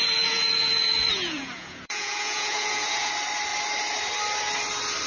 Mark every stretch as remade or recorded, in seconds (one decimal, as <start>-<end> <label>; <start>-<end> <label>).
0.0-3.1 remade; 3.1-5.1 recorded